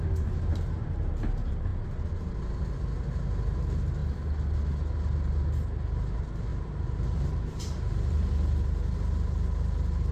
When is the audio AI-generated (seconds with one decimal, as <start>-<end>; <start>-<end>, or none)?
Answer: 0.5-1.1; 6.5-10.1